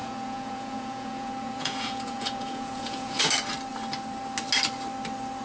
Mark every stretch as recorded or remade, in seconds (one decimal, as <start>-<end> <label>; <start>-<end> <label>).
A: 0.0-3.2 remade; 3.2-5.4 recorded